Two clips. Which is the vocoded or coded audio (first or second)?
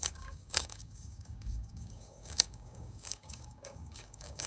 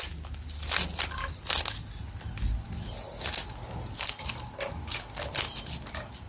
first